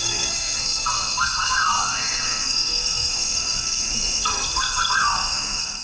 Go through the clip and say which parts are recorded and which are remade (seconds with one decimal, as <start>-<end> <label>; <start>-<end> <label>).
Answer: 0.0-5.8 remade